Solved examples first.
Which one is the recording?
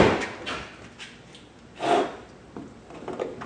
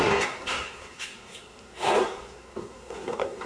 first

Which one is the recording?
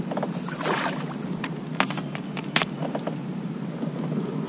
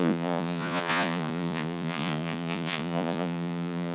first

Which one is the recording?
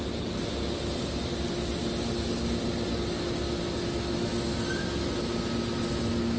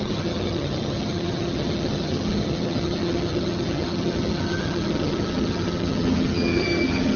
first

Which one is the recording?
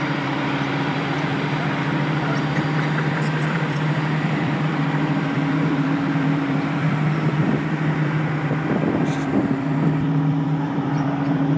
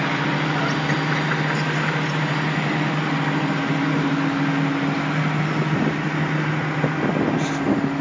second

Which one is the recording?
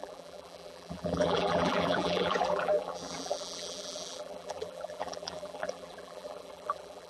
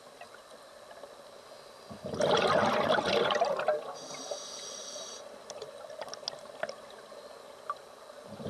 second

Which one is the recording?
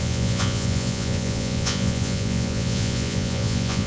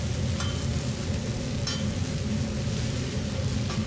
second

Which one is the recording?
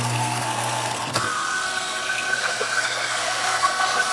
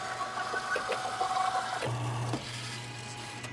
second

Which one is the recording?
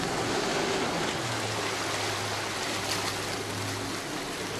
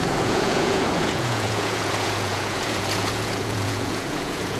first